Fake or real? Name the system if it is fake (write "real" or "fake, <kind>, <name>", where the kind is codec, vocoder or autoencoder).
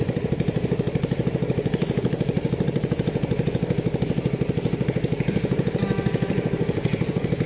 fake, vocoder, BigVGAN v2